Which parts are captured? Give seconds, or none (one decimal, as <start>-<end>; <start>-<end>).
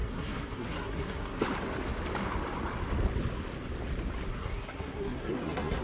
1.4-4.3